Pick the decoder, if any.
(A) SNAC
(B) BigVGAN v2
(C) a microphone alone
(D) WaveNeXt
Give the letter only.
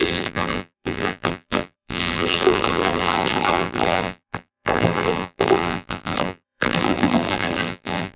B